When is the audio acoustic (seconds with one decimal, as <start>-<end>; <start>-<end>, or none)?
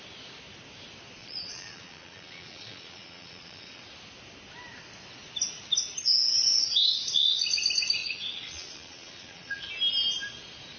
0.0-1.2; 3.8-8.0; 9.7-10.8